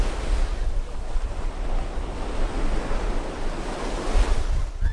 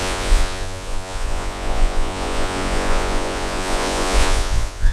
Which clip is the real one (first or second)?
first